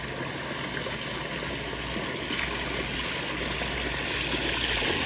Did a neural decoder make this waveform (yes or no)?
no